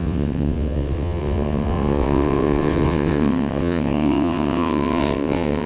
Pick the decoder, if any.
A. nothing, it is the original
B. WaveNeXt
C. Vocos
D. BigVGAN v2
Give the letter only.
B